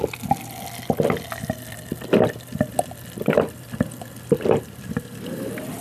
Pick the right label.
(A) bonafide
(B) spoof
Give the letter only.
B